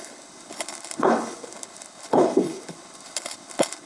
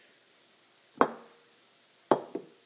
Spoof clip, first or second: first